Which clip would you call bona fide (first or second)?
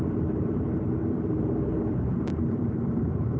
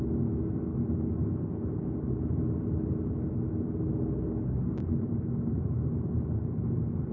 second